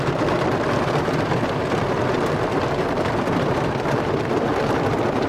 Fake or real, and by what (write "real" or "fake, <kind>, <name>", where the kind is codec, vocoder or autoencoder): fake, vocoder, BigVGAN v2